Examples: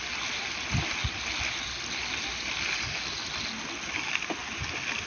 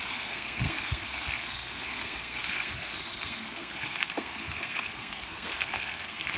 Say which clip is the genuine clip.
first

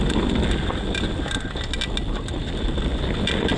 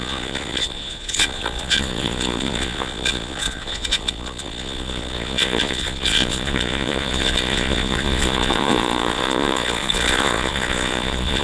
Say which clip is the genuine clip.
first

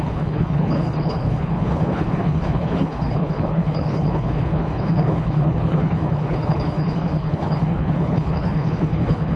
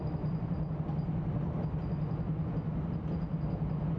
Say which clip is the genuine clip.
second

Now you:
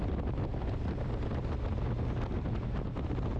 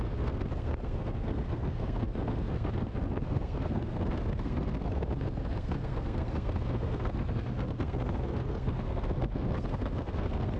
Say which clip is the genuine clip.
first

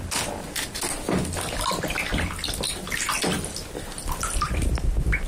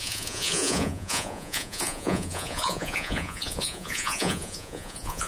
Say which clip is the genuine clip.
first